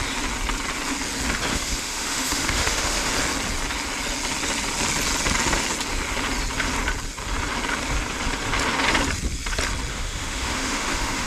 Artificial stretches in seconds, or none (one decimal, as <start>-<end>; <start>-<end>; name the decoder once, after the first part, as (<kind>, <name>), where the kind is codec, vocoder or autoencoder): 1.5-3.1 (autoencoder, DAC-VAE); 9.9-11.3